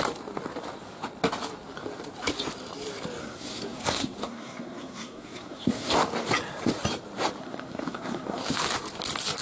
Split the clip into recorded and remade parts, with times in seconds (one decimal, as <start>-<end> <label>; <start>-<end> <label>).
0.0-3.2 recorded; 3.2-5.9 remade; 5.9-7.4 recorded; 7.4-8.4 remade; 8.4-9.4 recorded